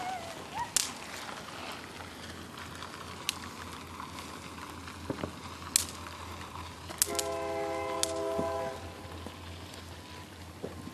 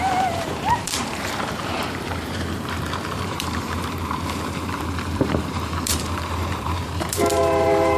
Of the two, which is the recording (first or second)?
first